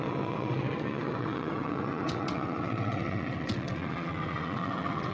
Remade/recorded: remade